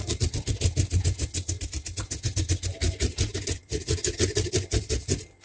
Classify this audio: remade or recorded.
recorded